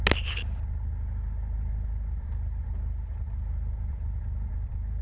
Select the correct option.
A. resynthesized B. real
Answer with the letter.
B